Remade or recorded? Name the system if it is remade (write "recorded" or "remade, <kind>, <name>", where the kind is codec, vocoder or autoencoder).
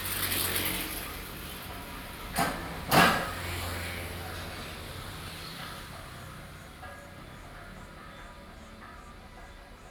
recorded